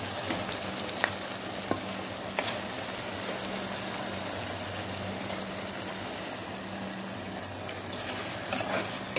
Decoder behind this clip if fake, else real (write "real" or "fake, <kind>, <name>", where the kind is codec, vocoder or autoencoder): real